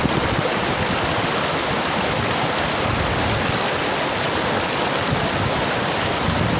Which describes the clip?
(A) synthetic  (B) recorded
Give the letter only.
B